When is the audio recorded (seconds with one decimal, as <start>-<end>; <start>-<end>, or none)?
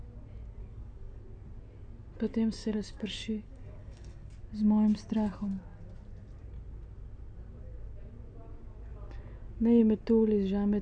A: 0.0-0.6; 1.2-2.6; 4.3-10.8